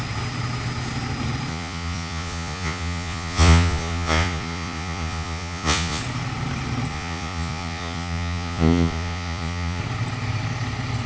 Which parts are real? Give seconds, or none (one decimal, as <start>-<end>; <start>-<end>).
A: 0.0-1.5; 6.0-6.9; 9.8-11.1